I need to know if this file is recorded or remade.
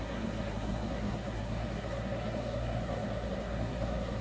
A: remade